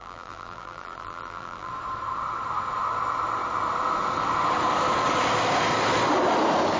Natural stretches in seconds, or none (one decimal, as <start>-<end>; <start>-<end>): 1.7-6.8